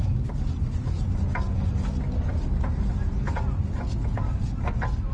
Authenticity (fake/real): real